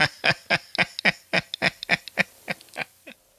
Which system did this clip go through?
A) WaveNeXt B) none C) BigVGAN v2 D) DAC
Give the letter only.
B